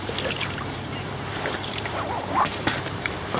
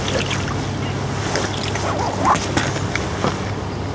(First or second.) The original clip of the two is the second